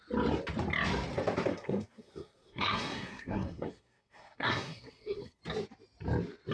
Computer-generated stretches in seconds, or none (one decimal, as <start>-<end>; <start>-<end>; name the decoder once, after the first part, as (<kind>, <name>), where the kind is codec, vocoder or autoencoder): 1.5-5.4 (codec, SNAC)